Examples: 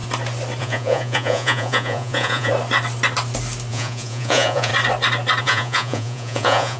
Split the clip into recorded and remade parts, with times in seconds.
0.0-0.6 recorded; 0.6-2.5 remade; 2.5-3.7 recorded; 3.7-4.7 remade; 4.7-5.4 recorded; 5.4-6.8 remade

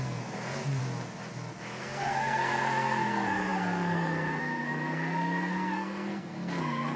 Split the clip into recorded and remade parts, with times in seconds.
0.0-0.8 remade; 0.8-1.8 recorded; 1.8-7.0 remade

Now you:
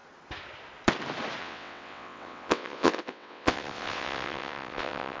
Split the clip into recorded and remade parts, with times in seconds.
0.0-1.4 recorded; 1.4-5.2 remade

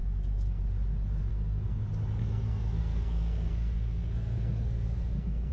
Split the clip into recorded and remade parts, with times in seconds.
0.0-0.6 remade; 0.6-1.3 recorded; 1.3-1.8 remade; 1.8-2.2 recorded; 2.2-5.5 remade